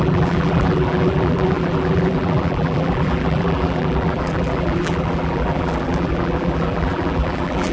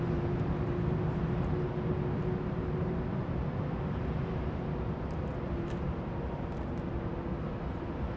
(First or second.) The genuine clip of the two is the second